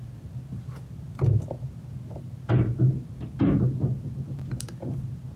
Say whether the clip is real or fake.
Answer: real